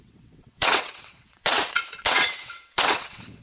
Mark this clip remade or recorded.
remade